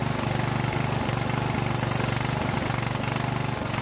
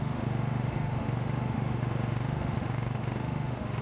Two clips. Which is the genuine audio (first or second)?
first